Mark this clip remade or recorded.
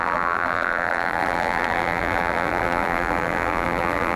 remade